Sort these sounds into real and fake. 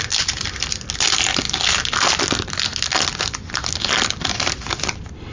real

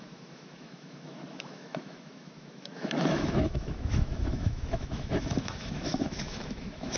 fake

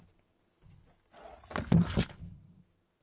real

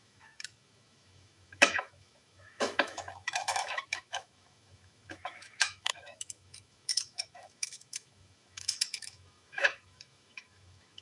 fake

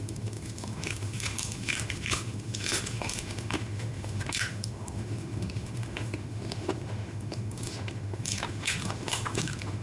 fake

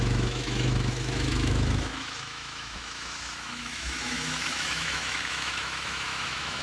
fake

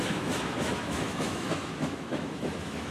fake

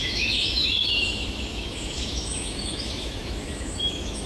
fake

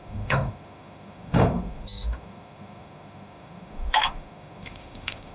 fake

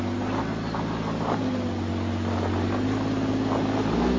real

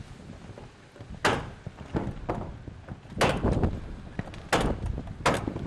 real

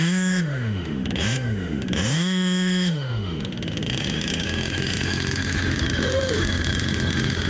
fake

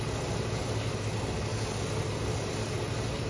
real